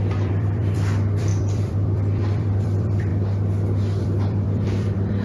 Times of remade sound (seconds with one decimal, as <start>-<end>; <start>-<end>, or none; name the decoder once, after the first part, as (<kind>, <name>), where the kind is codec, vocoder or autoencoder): 0.0-3.1 (vocoder, BigVGAN v2); 4.0-5.2